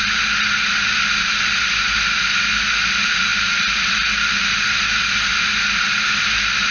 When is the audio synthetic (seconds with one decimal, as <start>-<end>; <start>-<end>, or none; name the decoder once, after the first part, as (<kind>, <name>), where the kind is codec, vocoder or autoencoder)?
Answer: none